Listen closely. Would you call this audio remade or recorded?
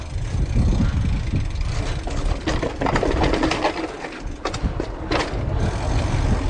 recorded